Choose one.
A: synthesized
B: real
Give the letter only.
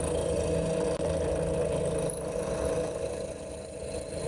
B